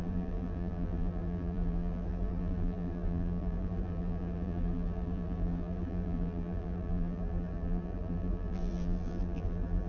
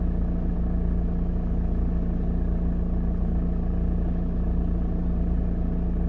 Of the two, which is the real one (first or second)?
second